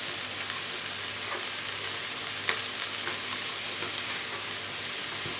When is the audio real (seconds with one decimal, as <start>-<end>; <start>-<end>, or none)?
0.0-5.4